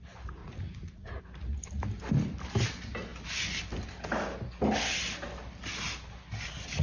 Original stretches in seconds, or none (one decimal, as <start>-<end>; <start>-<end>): 0.0-0.4; 1.2-6.8